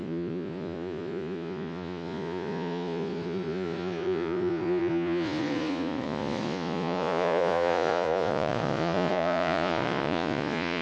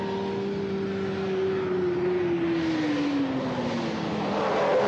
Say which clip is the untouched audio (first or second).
second